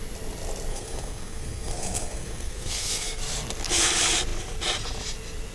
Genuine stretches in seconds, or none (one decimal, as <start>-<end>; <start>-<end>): 0.0-0.7; 3.2-5.5